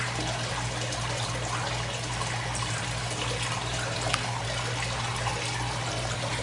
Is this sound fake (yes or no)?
no